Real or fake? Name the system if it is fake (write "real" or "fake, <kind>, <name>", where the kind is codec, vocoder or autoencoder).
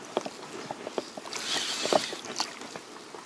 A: real